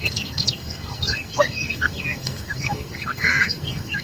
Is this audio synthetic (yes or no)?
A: yes